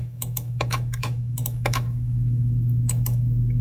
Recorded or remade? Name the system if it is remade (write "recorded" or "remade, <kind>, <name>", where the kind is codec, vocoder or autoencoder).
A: remade, autoencoder, DAC-VAE